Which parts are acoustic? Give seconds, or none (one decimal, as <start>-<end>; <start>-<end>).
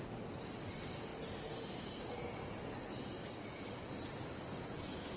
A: 0.0-5.2